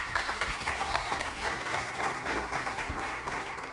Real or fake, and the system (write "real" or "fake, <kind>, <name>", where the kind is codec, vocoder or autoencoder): fake, codec, SNAC